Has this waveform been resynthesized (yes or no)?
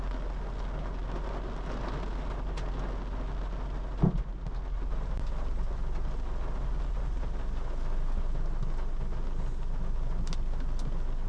no